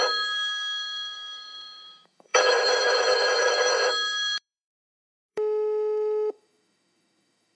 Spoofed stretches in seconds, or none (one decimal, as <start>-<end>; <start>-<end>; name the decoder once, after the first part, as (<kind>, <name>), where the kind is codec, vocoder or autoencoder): 0.0-7.5 (autoencoder, DAC-VAE)